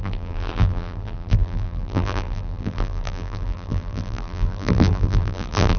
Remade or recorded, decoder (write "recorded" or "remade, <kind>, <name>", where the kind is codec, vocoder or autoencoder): remade, vocoder, BigVGAN v2